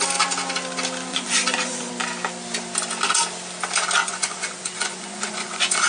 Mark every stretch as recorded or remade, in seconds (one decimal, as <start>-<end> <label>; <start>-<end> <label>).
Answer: 0.0-1.1 recorded; 1.1-1.9 remade; 1.9-4.0 recorded; 4.0-5.9 remade